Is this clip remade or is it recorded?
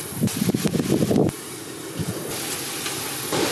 recorded